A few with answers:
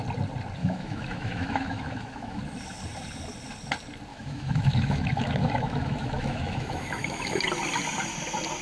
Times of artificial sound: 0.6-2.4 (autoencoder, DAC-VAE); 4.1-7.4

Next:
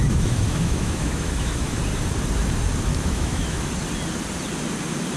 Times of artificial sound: 0.0-1.8 (autoencoder, DAC-VAE); 2.9-3.7

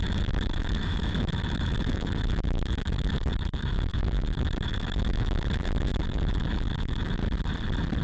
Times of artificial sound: 0.0-7.2 (autoencoder, DAC-VAE)

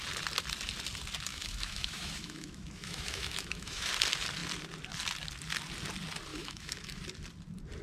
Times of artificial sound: 1.3-3.9 (autoencoder, DAC-VAE); 6.3-7.0

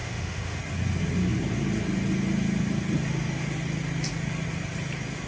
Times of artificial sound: 0.0-0.6 (autoencoder, DAC-VAE)